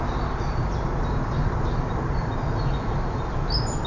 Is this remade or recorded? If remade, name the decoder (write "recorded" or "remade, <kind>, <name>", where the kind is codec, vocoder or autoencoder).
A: recorded